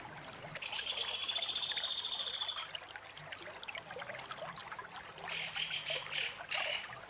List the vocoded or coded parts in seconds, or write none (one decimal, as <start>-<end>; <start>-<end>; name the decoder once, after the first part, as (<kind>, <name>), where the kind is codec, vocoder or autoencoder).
none